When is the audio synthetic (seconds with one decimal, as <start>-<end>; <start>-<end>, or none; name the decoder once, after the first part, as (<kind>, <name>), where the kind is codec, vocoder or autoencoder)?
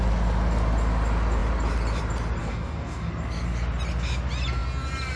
2.4-3.1 (codec, DAC)